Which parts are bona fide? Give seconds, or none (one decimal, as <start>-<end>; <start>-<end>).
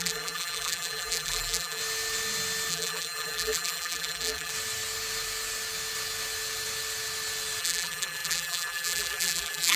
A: 1.8-2.7; 4.5-7.6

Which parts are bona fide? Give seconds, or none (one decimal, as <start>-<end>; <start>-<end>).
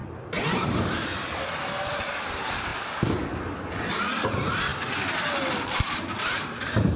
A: 0.0-7.0